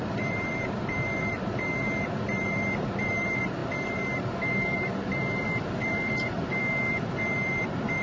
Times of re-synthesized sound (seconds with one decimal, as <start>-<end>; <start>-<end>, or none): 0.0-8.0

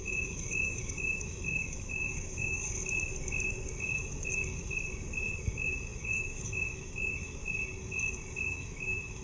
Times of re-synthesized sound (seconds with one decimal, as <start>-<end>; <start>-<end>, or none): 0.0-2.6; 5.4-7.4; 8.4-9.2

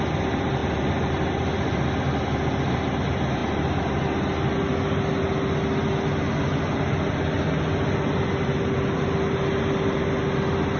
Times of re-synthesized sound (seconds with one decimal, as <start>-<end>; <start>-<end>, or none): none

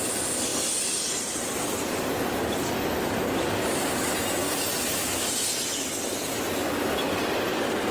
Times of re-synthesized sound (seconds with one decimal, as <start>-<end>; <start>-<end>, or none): none

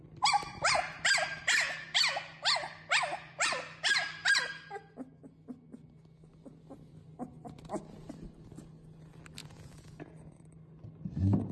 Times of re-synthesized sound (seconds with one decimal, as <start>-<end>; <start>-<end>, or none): 9.4-10.0

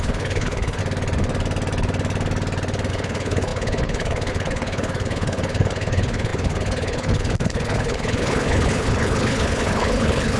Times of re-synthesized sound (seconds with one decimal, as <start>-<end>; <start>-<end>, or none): 0.0-0.8; 2.9-10.4

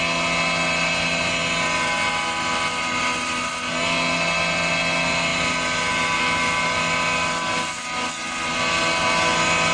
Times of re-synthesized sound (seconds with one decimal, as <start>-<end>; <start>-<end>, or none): none